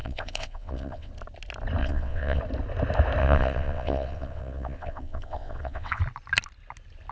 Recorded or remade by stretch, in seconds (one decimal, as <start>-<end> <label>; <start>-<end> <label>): 0.0-1.1 remade; 1.1-1.8 recorded; 1.8-2.4 remade; 2.4-3.2 recorded; 3.2-6.0 remade; 6.0-7.1 recorded